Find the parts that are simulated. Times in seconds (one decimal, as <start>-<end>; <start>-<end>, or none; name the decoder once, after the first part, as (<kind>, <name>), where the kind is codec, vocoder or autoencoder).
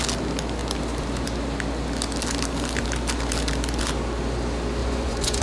4.8-5.4 (vocoder, Vocos)